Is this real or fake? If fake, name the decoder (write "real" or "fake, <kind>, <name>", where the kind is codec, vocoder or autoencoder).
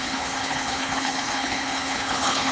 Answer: fake, codec, HILCodec